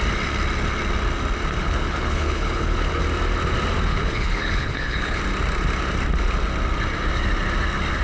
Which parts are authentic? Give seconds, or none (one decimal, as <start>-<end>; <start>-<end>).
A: 0.0-1.6; 3.0-3.9; 5.2-8.0